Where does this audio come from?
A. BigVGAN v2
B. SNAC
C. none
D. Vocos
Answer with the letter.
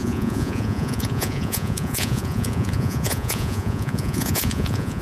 D